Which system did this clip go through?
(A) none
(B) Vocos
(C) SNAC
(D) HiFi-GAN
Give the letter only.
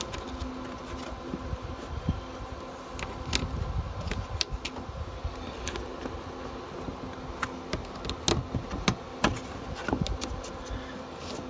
A